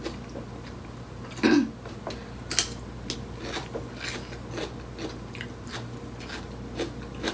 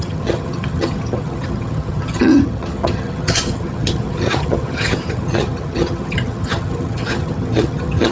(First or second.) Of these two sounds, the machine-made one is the second